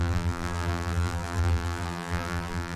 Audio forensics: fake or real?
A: fake